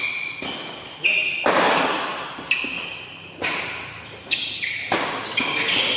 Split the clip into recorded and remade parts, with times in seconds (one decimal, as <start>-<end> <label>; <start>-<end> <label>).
0.0-6.0 recorded